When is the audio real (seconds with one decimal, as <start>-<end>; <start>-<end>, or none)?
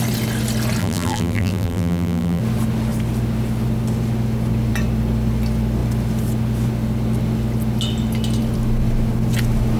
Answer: 0.0-0.8; 2.4-9.8